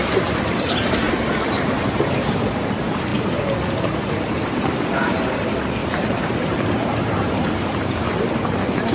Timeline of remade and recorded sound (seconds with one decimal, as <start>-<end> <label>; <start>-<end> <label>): 0.0-5.8 recorded; 5.8-8.2 remade; 8.2-8.9 recorded